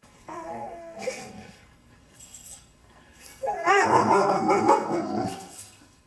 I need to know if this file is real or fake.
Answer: fake